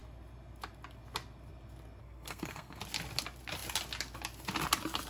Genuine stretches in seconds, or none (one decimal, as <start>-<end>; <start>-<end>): 0.0-2.0; 2.8-5.1